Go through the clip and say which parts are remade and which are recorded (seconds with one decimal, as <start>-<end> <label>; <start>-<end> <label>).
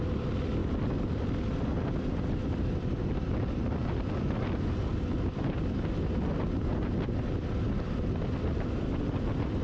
0.0-9.6 recorded